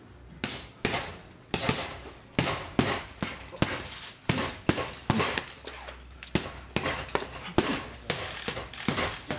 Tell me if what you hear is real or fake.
real